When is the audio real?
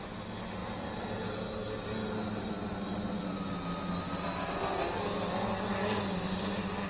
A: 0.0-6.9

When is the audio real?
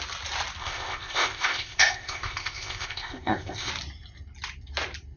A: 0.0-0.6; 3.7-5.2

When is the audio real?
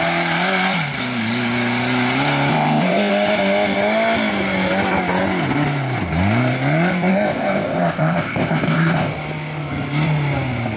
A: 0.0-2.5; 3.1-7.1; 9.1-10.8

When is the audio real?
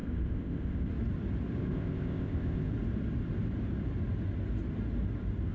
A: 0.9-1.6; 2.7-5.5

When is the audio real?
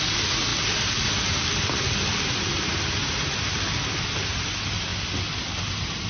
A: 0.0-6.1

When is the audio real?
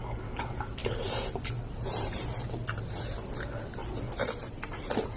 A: 0.0-5.2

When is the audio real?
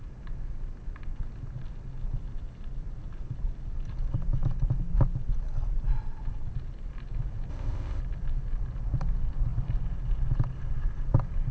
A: 0.0-7.5; 8.0-11.5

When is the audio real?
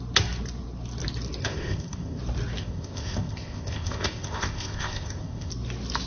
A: 0.0-1.4; 2.2-2.6; 5.5-6.1